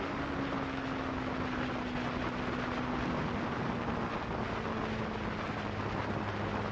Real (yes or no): yes